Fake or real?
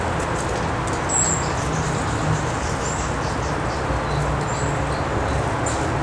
real